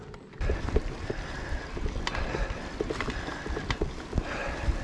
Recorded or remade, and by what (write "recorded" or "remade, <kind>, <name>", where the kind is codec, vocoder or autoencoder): recorded